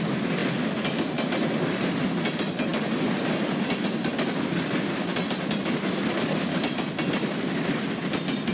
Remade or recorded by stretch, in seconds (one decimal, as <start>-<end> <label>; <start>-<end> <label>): 0.0-8.5 recorded